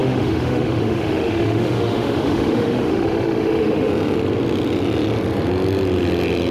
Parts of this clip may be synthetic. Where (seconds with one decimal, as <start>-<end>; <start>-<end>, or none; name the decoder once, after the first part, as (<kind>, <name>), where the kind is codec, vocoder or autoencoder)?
0.0-3.9 (autoencoder, DAC-VAE)